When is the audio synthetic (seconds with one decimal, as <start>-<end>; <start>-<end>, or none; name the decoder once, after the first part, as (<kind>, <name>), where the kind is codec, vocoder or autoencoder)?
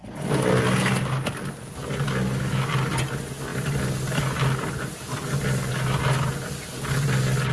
none